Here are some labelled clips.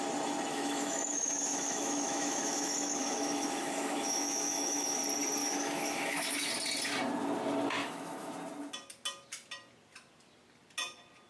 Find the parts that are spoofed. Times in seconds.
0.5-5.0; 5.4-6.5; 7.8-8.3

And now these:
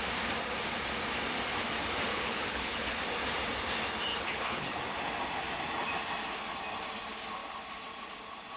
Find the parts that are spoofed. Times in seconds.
2.1-2.9; 4.1-4.8